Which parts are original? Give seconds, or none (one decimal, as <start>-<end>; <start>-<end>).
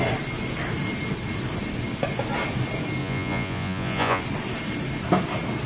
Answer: 0.0-3.0; 4.2-5.7